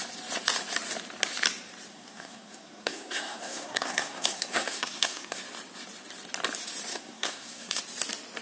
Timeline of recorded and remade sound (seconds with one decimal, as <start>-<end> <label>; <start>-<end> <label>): 0.0-1.9 recorded; 1.9-5.4 remade; 5.4-6.9 recorded; 6.9-7.8 remade; 7.8-8.4 recorded